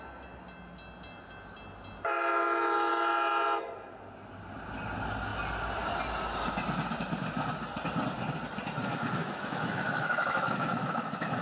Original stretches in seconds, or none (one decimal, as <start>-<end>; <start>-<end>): 0.0-9.2